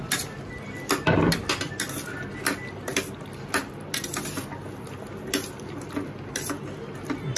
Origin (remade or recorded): recorded